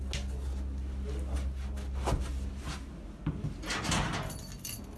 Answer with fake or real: real